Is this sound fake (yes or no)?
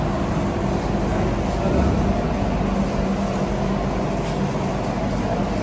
no